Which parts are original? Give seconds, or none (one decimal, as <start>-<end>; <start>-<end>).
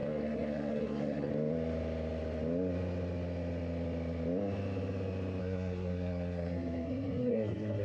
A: 1.3-5.4